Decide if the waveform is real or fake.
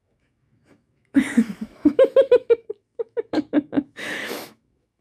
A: fake